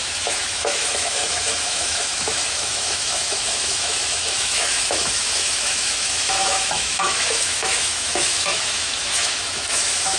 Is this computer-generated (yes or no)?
yes